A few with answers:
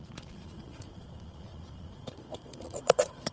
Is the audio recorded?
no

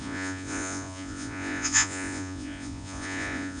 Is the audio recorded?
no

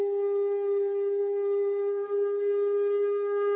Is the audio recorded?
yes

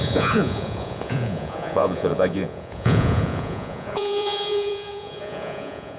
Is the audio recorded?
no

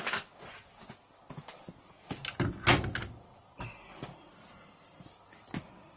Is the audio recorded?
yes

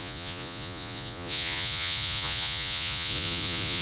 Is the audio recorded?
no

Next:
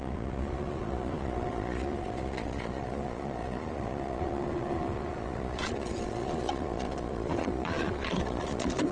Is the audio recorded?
no